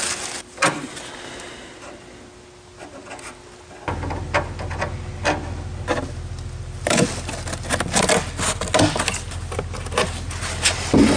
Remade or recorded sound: recorded